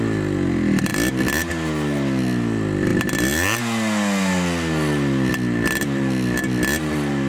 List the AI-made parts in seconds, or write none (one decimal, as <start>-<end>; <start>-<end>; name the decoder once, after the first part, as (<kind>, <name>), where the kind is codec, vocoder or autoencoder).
none